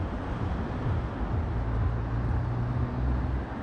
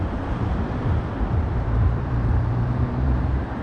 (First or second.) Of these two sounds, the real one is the first